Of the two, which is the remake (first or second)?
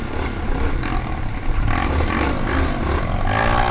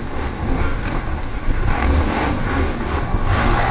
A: second